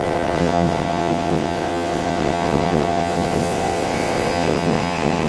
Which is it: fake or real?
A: fake